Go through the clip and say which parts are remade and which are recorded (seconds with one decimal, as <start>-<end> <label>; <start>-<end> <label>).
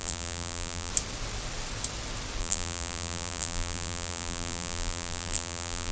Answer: 0.0-0.9 remade; 0.9-2.4 recorded; 2.4-5.9 remade